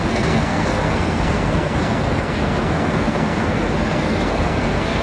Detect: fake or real fake